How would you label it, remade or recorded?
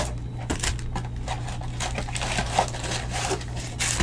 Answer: recorded